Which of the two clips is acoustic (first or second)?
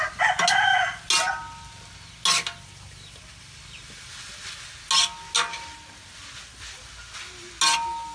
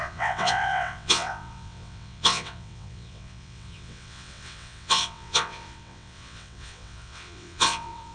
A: first